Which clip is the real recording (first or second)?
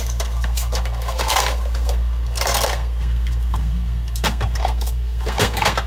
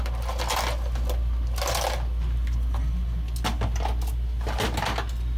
second